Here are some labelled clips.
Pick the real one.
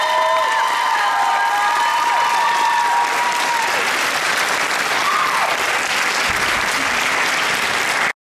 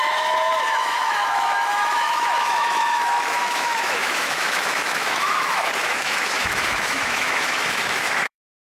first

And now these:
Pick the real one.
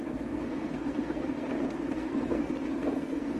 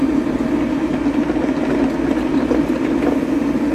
second